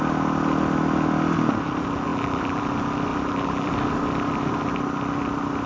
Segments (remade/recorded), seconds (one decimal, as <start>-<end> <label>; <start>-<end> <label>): 0.0-2.1 recorded; 2.1-2.6 remade; 2.6-3.1 recorded; 3.1-3.7 remade; 3.7-5.7 recorded